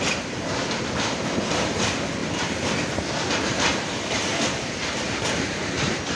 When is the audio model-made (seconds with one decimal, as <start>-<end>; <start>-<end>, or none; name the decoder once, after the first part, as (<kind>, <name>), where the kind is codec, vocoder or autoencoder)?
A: 0.0-2.2 (vocoder, BigVGAN v2); 3.0-6.2